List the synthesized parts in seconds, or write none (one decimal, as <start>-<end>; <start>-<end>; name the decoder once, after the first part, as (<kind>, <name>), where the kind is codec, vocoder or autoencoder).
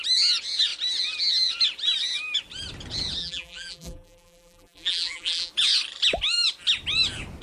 3.2-5.5 (vocoder, BigVGAN v2)